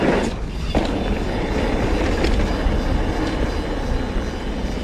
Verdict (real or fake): real